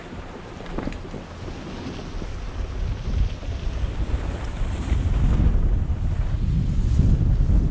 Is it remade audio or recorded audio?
recorded